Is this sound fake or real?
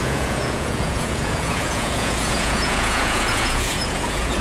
fake